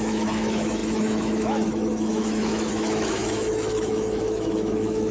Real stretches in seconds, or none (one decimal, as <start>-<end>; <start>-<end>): none